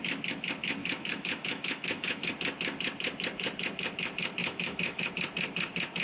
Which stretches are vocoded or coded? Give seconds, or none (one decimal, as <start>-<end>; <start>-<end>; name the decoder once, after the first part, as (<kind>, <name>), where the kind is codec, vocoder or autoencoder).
0.8-2.3 (autoencoder, DAC-VAE); 4.4-5.1